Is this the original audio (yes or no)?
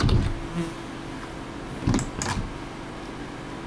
yes